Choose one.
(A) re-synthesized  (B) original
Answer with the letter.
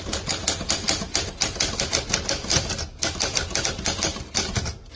B